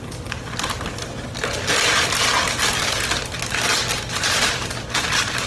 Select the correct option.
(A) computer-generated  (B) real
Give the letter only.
B